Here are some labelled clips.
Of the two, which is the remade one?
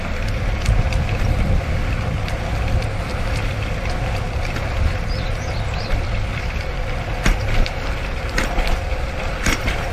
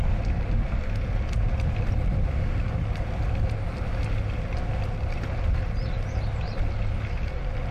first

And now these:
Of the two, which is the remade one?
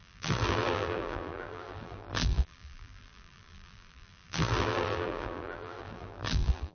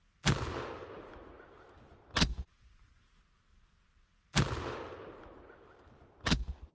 first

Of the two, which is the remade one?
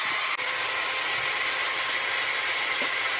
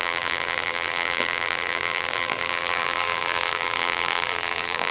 second